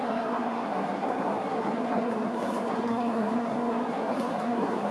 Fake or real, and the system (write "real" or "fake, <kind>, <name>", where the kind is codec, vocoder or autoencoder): fake, codec, SNAC